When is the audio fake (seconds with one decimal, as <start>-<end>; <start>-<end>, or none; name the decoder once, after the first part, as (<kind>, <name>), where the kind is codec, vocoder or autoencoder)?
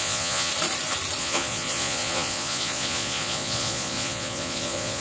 0.0-0.5 (vocoder, Vocos); 1.2-5.0